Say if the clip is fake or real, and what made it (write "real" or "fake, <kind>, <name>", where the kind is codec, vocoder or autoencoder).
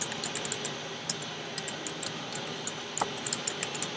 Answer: real